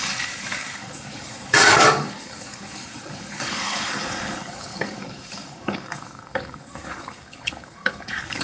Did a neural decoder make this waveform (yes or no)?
yes